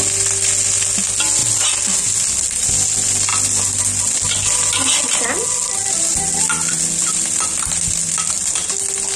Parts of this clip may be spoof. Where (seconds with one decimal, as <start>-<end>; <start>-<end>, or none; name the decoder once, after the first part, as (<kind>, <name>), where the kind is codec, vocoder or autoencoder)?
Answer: none